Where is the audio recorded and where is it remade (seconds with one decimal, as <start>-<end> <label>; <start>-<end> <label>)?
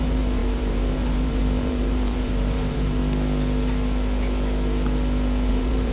0.0-3.0 remade; 3.0-5.5 recorded; 5.5-5.9 remade